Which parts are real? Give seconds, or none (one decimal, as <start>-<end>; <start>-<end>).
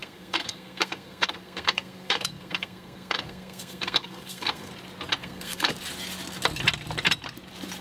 4.7-5.2; 5.7-7.8